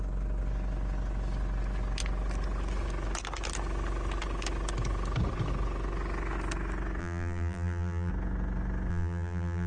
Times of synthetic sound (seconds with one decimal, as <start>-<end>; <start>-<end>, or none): 7.0-8.1; 8.9-9.7